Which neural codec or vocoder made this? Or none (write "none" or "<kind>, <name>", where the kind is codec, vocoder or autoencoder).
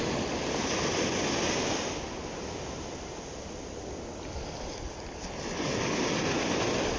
none